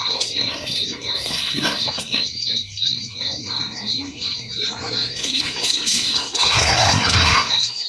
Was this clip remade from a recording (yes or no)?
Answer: yes